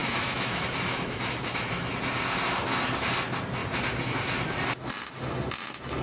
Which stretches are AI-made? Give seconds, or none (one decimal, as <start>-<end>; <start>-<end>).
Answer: 0.0-1.9